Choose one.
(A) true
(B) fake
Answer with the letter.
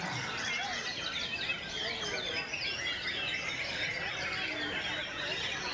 A